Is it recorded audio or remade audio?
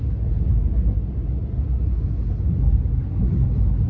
recorded